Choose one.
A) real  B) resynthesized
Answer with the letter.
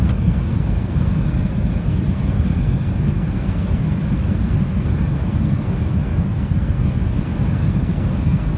B